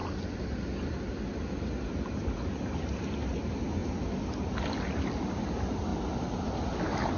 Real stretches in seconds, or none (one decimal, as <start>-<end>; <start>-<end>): 0.0-7.2